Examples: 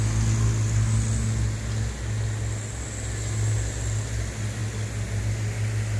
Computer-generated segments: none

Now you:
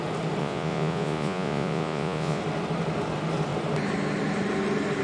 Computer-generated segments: 0.4-2.4 (vocoder, Vocos)

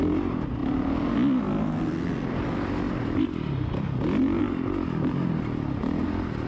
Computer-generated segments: none

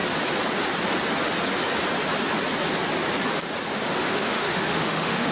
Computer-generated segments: 3.7-5.3 (autoencoder, DAC-VAE)

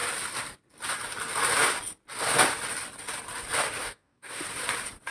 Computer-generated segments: 3.8-4.4 (codec, DAC)

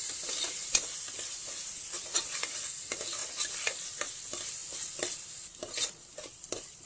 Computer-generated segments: 0.0-6.9 (vocoder, BigVGAN v2)